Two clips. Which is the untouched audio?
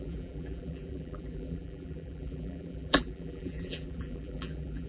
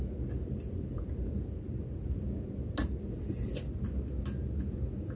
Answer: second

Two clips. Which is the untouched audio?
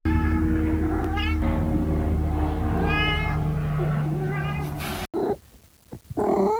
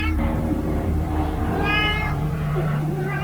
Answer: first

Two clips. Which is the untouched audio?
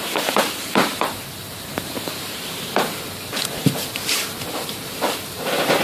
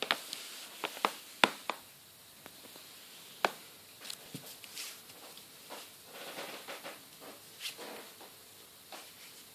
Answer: second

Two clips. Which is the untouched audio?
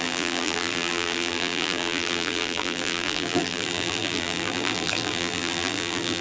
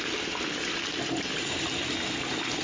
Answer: second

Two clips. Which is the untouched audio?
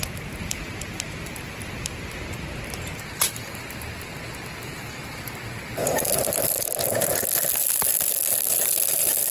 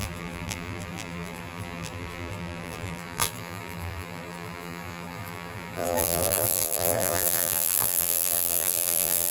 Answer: first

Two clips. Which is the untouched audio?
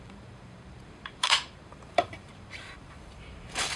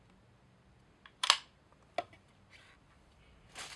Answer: second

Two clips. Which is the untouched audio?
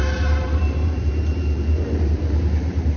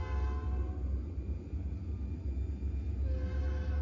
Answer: second